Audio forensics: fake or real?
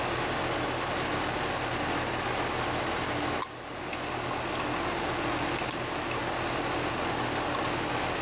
real